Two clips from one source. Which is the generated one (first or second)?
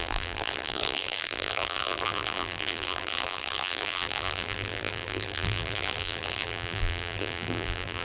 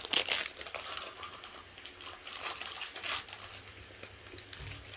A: first